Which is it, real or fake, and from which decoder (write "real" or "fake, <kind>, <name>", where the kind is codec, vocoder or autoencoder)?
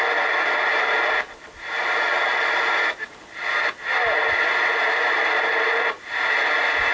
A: real